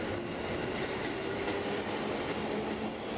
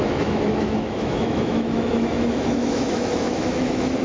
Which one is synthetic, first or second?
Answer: second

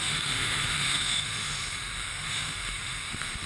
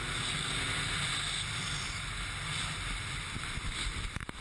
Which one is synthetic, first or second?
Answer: first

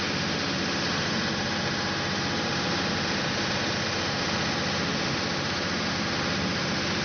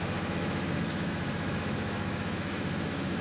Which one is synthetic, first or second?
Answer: second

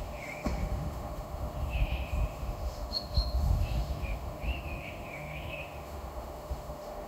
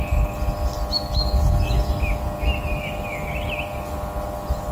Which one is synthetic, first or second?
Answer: first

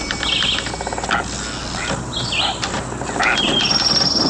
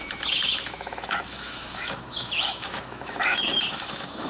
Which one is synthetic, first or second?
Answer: second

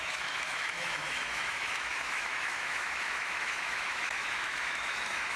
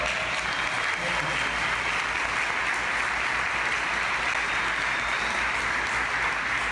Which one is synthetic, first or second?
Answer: first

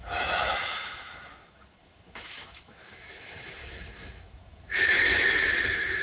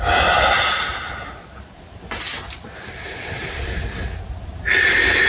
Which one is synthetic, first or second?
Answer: first